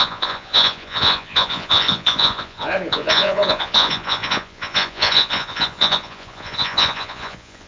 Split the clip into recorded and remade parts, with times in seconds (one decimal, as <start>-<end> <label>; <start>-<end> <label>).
0.0-7.7 remade